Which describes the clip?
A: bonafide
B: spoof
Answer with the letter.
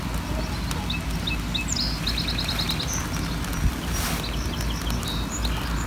A